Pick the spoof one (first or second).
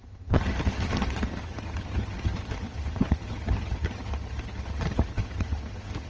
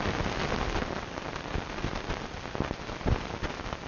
first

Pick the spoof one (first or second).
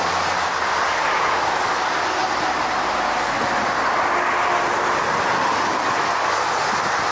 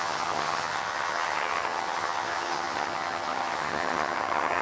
second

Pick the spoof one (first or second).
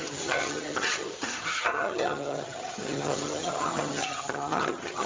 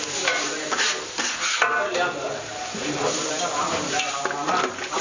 first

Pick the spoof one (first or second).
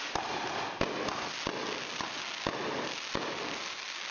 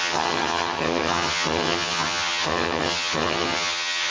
second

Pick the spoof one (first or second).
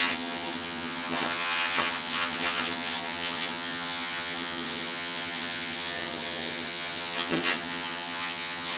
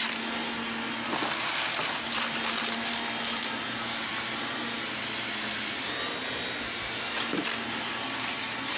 first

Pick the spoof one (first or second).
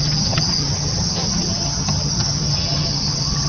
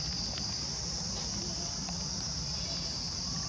first